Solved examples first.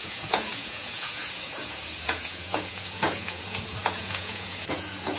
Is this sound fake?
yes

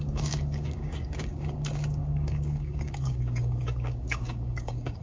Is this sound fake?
yes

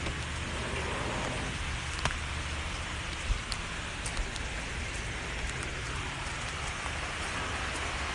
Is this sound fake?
no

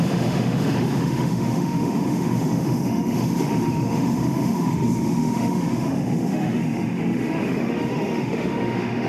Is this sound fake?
yes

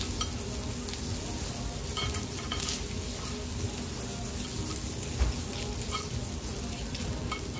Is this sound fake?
no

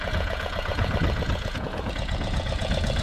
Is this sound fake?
yes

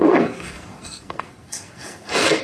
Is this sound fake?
yes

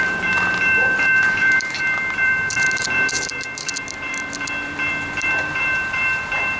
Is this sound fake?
yes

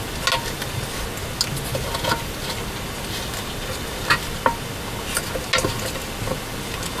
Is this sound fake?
no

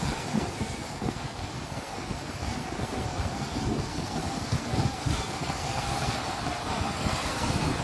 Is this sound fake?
yes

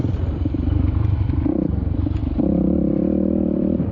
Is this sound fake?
yes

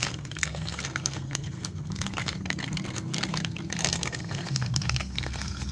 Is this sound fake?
yes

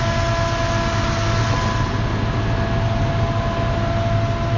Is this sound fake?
no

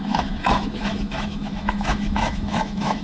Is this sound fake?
yes